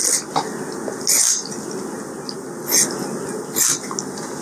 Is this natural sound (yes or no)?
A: yes